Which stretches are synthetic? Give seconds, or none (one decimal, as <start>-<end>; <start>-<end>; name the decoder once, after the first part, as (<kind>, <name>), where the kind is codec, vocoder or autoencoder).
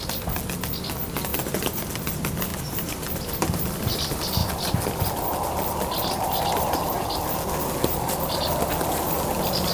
none